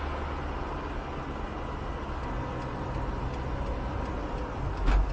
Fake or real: real